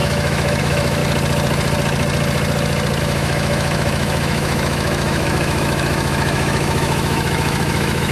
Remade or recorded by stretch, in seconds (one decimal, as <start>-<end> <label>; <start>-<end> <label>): 0.0-1.0 remade; 1.0-3.0 recorded; 3.0-8.1 remade